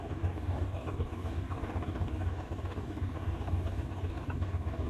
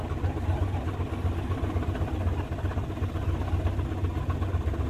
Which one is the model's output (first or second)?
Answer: first